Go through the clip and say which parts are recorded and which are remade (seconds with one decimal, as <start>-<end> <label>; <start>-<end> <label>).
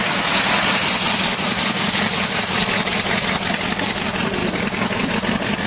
0.0-2.9 recorded; 2.9-4.0 remade; 4.0-4.4 recorded; 4.4-5.1 remade; 5.1-5.7 recorded